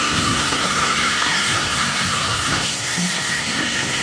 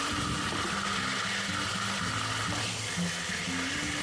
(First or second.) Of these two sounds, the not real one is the first